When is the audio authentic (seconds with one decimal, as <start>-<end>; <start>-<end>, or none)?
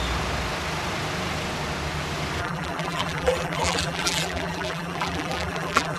0.0-2.4